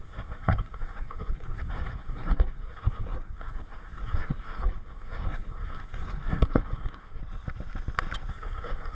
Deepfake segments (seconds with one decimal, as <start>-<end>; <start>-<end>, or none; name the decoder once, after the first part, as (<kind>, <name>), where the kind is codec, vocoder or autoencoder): 0.0-7.2 (codec, SNAC); 8.3-8.9